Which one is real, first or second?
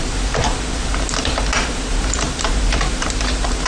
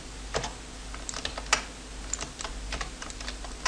second